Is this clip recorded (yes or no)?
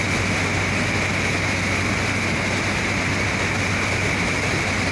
yes